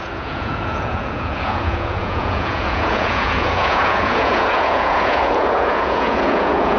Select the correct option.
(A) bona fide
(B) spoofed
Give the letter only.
B